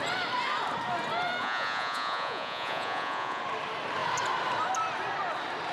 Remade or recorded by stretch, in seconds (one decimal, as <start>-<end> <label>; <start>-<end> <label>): 0.0-1.4 recorded; 1.4-3.4 remade; 3.4-5.7 recorded